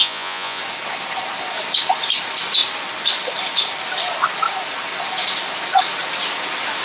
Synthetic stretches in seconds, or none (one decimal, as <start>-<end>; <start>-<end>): 0.0-0.6